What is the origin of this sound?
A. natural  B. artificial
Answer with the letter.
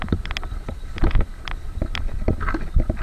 A